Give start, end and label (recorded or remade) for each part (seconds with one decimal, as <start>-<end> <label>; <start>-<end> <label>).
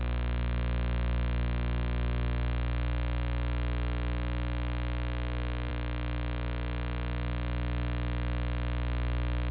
0.0-9.5 recorded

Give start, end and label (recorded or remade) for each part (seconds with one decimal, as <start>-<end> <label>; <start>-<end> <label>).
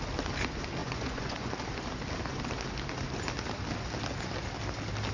0.0-0.8 recorded; 0.8-1.5 remade; 1.5-5.1 recorded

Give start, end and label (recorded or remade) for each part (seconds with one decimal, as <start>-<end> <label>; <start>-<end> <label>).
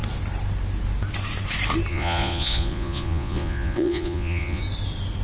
0.0-1.9 recorded; 1.9-4.6 remade; 4.6-5.2 recorded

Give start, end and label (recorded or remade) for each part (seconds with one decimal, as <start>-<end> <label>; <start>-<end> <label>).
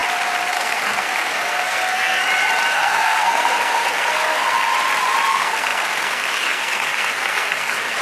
0.0-0.5 recorded; 0.5-2.2 remade; 2.2-2.7 recorded; 2.7-4.7 remade; 4.7-5.3 recorded; 5.3-8.0 remade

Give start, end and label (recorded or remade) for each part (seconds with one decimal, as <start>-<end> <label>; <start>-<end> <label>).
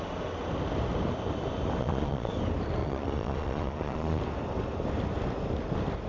0.0-1.8 recorded; 1.8-2.3 remade; 2.3-2.8 recorded; 2.8-4.2 remade; 4.2-6.1 recorded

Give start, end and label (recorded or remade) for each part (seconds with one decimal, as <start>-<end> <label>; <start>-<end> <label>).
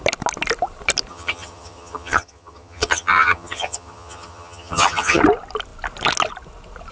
0.0-1.1 recorded; 1.1-5.2 remade; 5.2-6.9 recorded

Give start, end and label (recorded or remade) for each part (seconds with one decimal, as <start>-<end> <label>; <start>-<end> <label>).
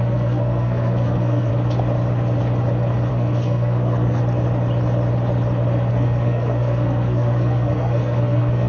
0.0-1.5 remade; 1.5-3.1 recorded; 3.1-4.2 remade; 4.2-5.9 recorded; 5.9-8.7 remade